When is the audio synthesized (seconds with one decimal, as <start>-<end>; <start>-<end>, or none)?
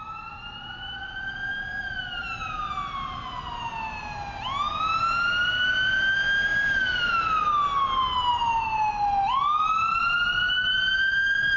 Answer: none